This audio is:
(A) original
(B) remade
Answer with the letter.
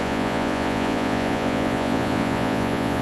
B